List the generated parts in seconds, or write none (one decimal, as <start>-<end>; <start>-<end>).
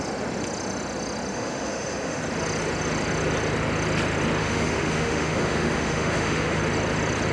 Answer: 1.3-2.2; 4.4-6.6